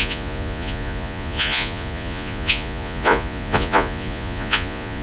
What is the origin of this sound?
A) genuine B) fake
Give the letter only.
B